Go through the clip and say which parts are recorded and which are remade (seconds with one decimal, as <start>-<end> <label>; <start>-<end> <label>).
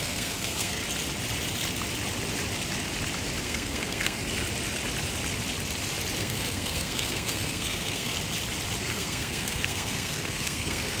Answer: 0.0-0.8 remade; 0.8-3.4 recorded; 3.4-4.2 remade; 4.2-6.2 recorded; 6.2-8.1 remade; 8.1-8.8 recorded; 8.8-11.0 remade